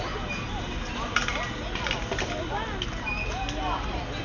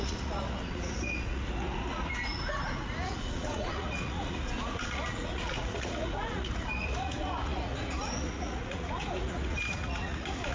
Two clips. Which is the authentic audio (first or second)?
first